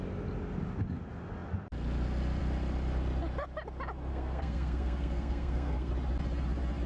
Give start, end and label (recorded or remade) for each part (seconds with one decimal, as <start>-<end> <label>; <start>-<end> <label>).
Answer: 0.0-4.1 recorded; 4.1-5.9 remade; 5.9-6.9 recorded